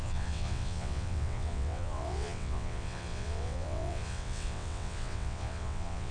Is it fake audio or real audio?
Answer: fake